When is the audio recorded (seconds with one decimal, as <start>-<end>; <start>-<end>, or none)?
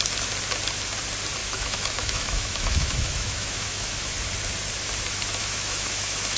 0.0-1.4; 3.9-5.4